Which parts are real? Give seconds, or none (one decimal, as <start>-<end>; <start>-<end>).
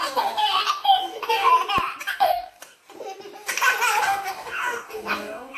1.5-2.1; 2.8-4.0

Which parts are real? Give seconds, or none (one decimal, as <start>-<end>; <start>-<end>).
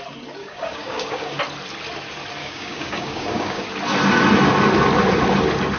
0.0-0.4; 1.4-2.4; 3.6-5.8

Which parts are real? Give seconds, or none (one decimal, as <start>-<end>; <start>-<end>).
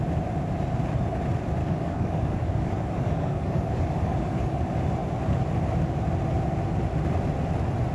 0.0-1.6; 4.6-7.9